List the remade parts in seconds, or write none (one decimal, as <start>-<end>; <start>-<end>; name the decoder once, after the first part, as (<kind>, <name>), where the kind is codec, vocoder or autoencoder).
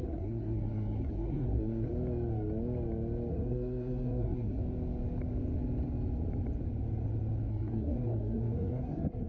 0.0-1.9 (codec, SNAC); 3.3-4.6; 7.5-9.3